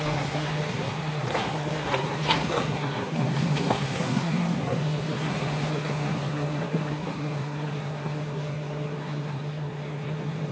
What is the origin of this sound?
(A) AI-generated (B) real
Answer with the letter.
A